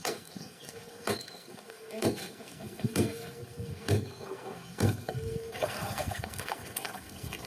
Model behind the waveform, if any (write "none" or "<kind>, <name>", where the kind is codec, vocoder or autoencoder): codec, SNAC